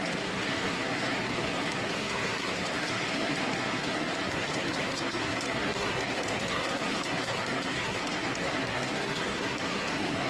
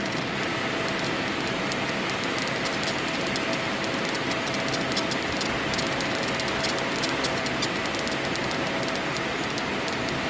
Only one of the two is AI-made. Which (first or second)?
first